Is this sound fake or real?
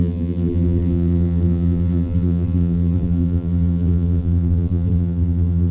fake